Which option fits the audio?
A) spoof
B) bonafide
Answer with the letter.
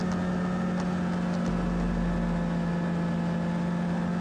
B